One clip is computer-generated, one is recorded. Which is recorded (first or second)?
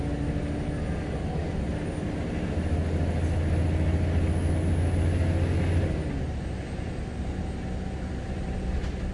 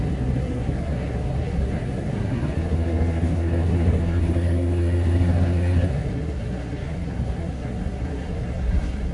first